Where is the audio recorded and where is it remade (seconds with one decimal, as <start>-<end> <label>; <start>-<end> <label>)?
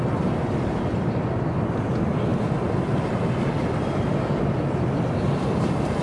0.0-6.0 recorded